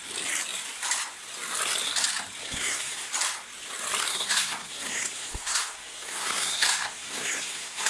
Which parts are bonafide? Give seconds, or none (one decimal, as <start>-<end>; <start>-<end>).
0.0-2.4; 3.1-4.1